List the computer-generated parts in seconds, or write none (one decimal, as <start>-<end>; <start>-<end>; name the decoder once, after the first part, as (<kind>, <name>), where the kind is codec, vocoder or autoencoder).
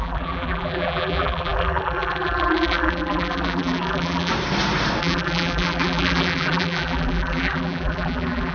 0.0-4.3 (vocoder, BigVGAN v2); 5.0-8.5